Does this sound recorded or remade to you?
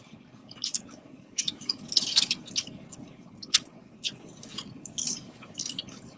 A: remade